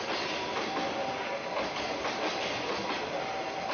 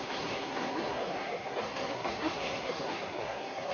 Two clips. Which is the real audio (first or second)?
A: first